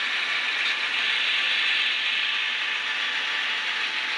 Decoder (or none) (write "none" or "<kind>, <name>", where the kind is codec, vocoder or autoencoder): none